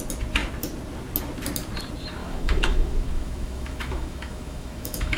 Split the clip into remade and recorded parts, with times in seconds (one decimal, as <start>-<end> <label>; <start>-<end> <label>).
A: 0.0-2.2 recorded; 2.2-5.2 remade